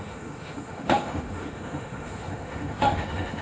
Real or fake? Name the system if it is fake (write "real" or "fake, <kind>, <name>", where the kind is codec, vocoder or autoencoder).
fake, autoencoder, DAC-VAE